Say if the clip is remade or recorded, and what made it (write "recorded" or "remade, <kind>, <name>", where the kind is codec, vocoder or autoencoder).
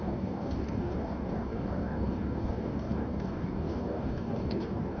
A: remade, codec, DAC